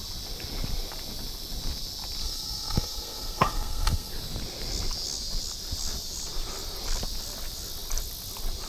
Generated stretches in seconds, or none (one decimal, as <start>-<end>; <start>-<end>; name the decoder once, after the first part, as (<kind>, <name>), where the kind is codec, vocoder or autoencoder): 2.2-4.1 (codec, SNAC)